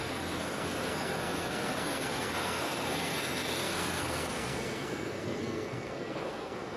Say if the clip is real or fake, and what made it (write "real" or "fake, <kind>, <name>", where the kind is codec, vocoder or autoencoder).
fake, codec, SNAC